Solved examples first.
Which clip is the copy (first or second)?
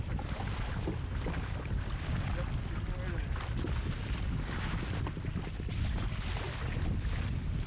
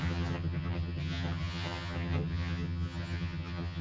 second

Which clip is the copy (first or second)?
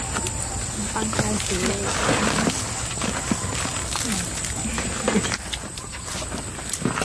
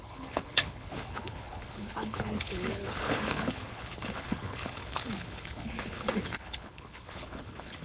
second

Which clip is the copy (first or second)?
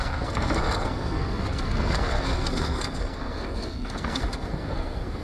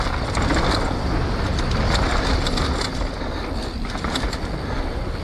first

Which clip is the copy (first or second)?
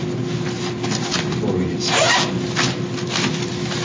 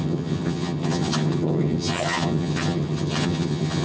second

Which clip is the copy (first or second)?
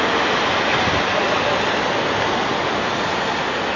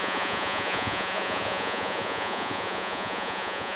second